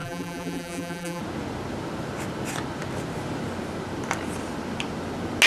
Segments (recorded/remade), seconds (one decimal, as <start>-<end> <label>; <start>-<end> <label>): 0.0-1.2 remade; 1.2-5.5 recorded